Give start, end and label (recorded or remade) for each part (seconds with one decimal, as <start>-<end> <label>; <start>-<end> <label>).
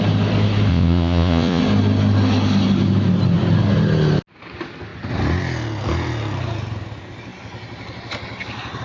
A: 0.0-0.7 recorded; 0.7-1.6 remade; 1.6-8.8 recorded